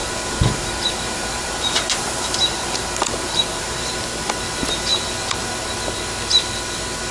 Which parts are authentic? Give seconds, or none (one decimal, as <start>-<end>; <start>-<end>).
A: 4.3-7.1